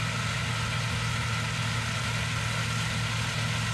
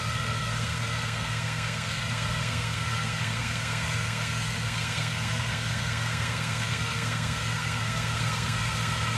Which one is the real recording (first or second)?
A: first